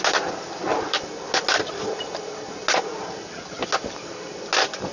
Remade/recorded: recorded